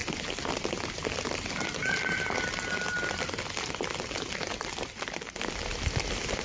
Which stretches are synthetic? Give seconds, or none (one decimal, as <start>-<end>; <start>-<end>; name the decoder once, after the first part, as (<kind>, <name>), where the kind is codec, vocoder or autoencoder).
none